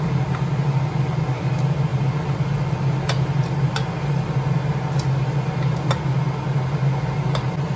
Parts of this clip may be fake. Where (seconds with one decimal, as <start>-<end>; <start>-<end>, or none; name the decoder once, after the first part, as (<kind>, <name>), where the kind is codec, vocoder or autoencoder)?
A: none